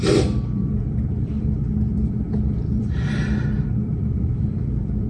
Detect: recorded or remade remade